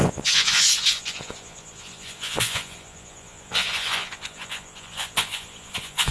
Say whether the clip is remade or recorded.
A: remade